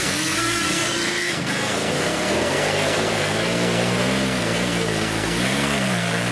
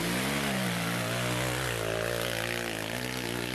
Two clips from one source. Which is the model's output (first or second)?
first